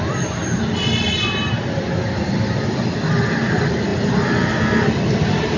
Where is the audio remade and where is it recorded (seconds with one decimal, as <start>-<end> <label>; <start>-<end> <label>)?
0.0-5.6 recorded

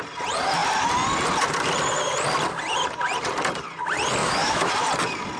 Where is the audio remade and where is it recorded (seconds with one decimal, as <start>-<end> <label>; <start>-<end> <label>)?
0.0-4.2 recorded; 4.2-4.7 remade; 4.7-5.4 recorded